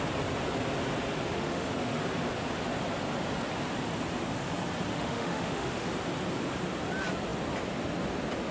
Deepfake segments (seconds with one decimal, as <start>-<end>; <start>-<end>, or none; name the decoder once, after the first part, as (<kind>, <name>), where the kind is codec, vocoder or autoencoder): 1.3-2.0 (autoencoder, DAC-VAE); 4.9-5.9